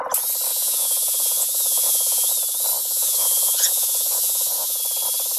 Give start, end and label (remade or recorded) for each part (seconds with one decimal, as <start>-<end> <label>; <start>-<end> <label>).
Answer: 0.0-0.5 recorded; 0.5-2.3 remade; 2.3-2.8 recorded; 2.8-4.8 remade; 4.8-5.4 recorded